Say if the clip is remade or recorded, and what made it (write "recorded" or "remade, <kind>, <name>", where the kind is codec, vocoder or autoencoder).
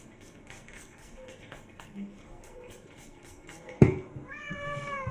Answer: remade, codec, SNAC